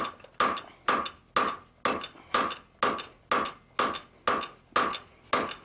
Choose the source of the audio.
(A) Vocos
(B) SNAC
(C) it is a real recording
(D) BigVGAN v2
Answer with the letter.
C